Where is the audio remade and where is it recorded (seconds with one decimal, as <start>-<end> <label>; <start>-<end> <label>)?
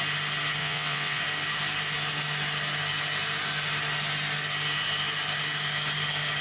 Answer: 0.0-0.6 recorded; 0.6-1.2 remade; 1.2-6.4 recorded